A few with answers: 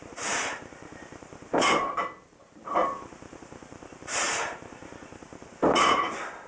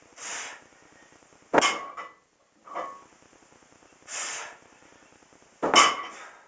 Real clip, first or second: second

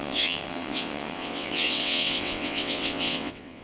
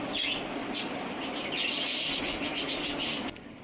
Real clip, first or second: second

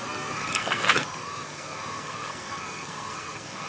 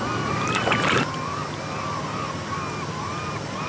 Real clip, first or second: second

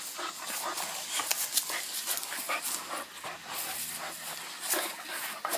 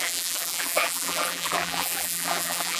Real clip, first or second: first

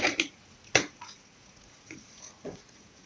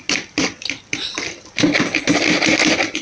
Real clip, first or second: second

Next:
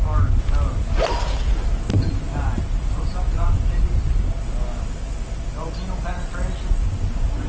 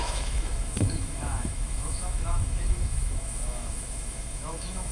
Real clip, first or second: first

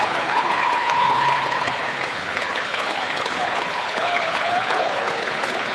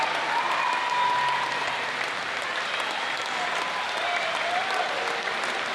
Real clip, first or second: second